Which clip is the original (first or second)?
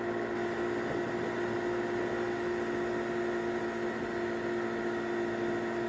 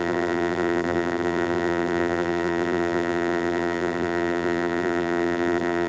first